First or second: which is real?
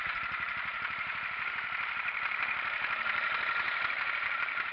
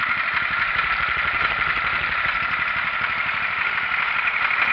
second